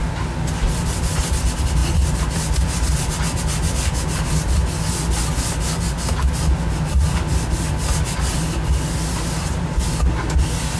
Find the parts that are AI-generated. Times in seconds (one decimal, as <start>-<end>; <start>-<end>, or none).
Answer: none